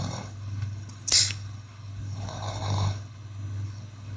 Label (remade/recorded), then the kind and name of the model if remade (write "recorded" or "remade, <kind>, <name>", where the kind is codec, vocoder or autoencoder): remade, codec, HILCodec